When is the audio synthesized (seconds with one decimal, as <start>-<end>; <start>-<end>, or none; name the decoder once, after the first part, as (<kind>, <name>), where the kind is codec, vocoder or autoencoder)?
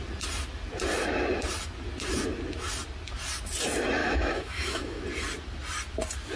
4.0-5.0 (autoencoder, DAC-VAE)